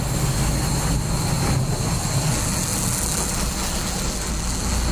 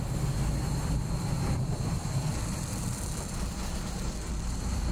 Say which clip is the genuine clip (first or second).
first